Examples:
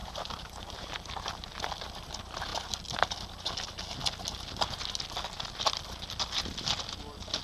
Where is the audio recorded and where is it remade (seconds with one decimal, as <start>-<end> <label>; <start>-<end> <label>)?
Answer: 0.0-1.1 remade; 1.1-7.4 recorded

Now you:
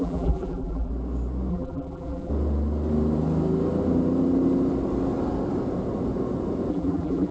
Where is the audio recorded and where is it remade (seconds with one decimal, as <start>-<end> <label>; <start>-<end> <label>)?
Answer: 0.0-0.9 remade; 0.9-1.5 recorded; 1.5-2.3 remade; 2.3-6.7 recorded; 6.7-7.3 remade

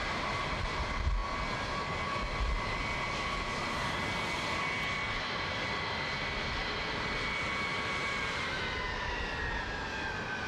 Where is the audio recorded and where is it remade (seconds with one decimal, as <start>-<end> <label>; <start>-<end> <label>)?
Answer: 0.0-7.7 recorded; 7.7-8.6 remade; 8.6-10.5 recorded